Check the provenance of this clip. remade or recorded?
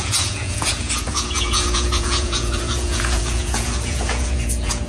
remade